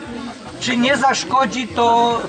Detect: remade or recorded remade